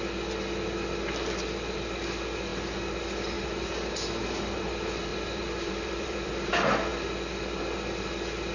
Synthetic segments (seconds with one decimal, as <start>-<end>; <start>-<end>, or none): 5.1-6.5